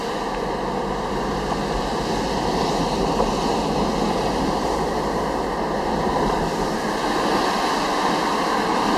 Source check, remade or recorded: recorded